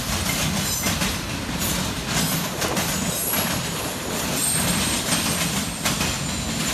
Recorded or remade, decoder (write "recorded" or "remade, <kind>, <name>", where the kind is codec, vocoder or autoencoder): recorded